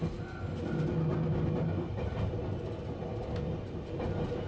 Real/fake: real